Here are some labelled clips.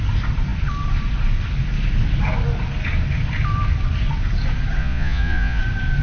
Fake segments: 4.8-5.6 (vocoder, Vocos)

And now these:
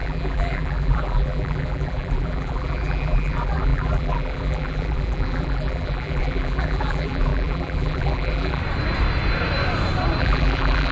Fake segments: 0.0-8.6 (vocoder, BigVGAN v2); 10.2-10.9

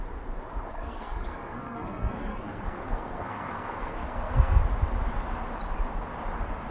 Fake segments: 0.7-4.6 (codec, SNAC)

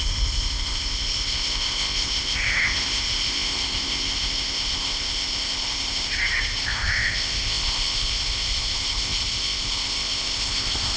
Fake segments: 0.0-6.1 (codec, ZipCodec); 6.6-11.0

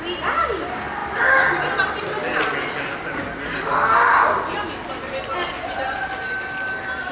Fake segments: none

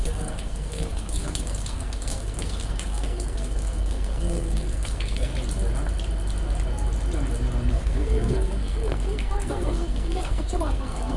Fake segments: 0.0-5.3 (codec, SNAC); 7.7-11.2

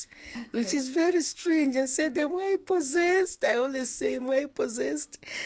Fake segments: 0.0-4.4 (codec, SNAC)